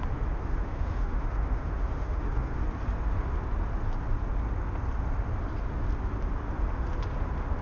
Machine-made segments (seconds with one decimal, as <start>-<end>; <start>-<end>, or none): 0.4-2.6